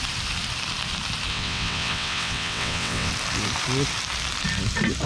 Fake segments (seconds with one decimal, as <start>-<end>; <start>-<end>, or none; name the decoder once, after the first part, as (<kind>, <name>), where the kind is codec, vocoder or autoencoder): 1.3-3.1 (vocoder, WaveNeXt)